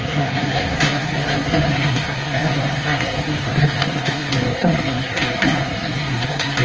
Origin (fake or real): fake